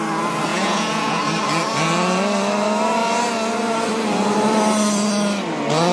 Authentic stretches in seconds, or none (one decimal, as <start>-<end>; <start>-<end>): 0.0-0.5; 1.2-5.9